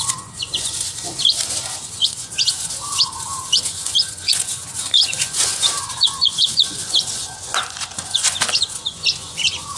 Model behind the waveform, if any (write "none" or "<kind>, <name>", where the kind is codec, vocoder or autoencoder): vocoder, Vocos